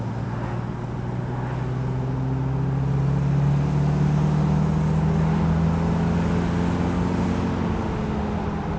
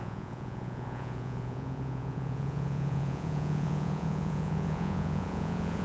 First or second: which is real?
first